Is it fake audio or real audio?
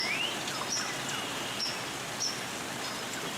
real